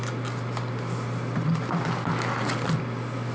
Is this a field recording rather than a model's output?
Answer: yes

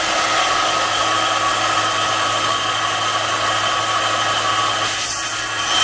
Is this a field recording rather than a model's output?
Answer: yes